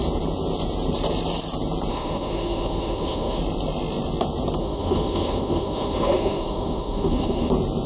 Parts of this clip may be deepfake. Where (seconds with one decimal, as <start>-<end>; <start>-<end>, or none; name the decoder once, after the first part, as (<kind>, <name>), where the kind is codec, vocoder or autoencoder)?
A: 1.9-3.4 (autoencoder, DAC-VAE); 4.6-7.5